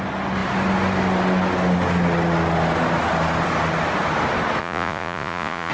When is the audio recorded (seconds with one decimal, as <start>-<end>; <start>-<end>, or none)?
0.0-4.6